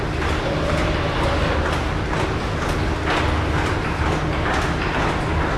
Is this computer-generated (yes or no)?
no